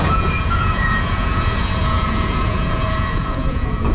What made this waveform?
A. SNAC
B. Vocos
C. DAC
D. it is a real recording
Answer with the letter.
B